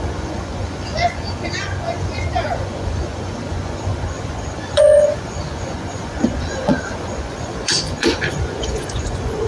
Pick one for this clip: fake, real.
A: fake